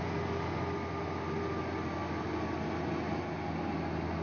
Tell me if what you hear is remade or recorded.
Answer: recorded